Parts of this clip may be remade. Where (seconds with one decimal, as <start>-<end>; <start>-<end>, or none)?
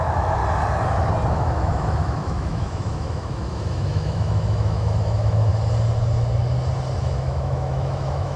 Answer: 0.0-0.4; 1.3-5.5; 7.0-8.4